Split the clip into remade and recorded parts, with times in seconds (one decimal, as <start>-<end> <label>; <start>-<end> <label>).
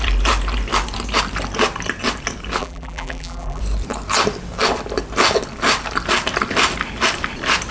0.0-2.6 recorded; 2.6-3.6 remade; 3.6-7.7 recorded